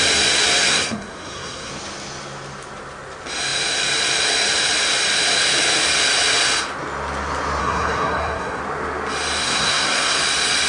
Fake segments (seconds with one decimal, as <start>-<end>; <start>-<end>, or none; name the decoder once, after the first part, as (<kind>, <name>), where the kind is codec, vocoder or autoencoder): 0.7-1.7 (codec, SNAC); 7.6-8.6; 9.4-10.2